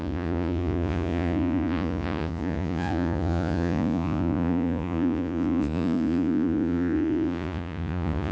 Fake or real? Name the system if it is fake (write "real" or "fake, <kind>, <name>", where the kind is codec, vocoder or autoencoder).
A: fake, vocoder, Vocos